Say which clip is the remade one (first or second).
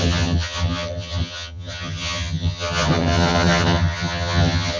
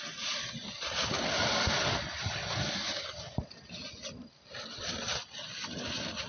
first